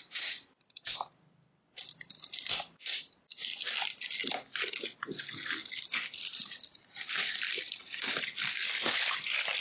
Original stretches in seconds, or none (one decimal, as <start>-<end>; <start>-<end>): 4.2-5.8